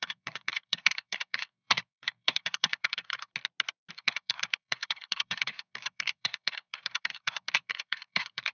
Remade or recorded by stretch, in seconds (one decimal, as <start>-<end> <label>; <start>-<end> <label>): 0.0-3.3 remade; 3.3-3.9 recorded; 3.9-8.5 remade